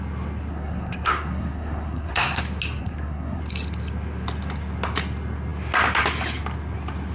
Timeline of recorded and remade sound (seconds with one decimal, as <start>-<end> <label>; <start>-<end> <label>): 0.0-0.5 recorded; 0.5-2.4 remade; 2.4-2.8 recorded; 2.8-3.4 remade; 3.4-7.1 recorded